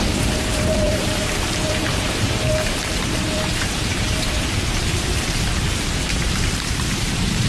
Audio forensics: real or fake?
fake